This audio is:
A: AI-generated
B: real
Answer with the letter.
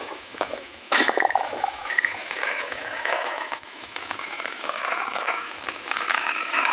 A